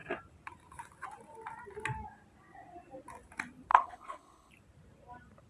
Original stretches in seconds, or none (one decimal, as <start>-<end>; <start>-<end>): 0.0-3.7; 4.5-5.5